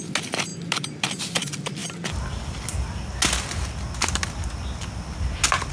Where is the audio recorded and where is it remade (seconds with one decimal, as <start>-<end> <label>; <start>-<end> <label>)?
0.0-5.7 recorded